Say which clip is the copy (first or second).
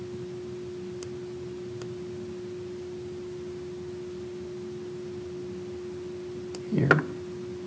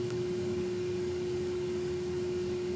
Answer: second